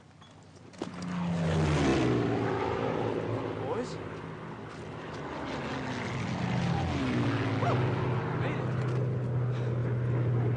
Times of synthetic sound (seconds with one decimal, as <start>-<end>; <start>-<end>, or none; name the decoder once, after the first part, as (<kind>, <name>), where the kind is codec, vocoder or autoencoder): none